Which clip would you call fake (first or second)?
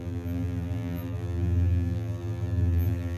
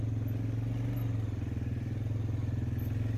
first